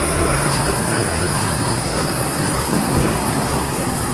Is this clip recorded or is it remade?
remade